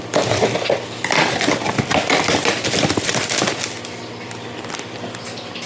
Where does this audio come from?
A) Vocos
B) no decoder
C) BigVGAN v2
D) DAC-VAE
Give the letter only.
B